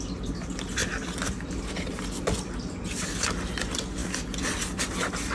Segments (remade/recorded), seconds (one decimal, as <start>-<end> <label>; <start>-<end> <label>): 0.0-5.3 recorded